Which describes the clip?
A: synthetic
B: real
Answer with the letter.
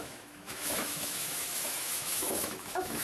A